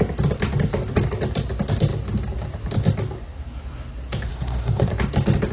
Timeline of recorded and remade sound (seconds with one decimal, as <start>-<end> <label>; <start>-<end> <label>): 0.0-4.3 recorded; 4.3-4.9 remade; 4.9-5.5 recorded